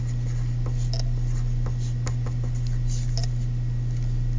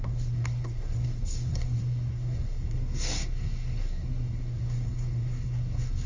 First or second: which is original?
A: first